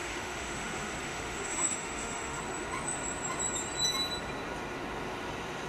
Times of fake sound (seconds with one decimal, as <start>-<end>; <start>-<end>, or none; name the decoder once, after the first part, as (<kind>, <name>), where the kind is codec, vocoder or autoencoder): 0.0-2.4 (autoencoder, DAC-VAE)